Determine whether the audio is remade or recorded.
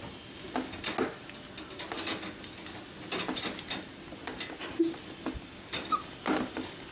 recorded